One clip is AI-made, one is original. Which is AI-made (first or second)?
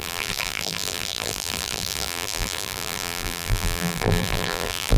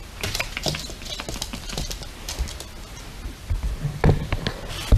first